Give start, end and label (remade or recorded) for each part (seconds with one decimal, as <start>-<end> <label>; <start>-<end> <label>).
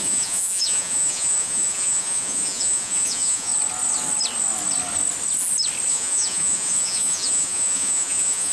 0.0-3.5 remade; 3.5-5.9 recorded; 5.9-8.5 remade